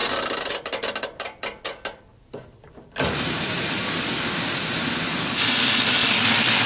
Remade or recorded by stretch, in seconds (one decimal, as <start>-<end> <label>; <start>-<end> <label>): 0.0-6.7 recorded